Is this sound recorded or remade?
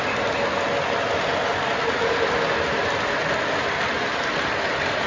recorded